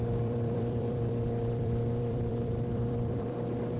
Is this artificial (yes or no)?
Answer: yes